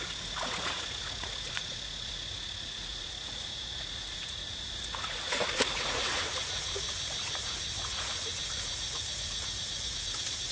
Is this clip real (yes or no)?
no